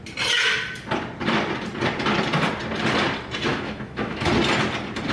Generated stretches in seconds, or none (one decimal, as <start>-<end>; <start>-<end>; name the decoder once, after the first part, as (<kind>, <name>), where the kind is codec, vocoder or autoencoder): 3.5-4.3 (autoencoder, DAC-VAE)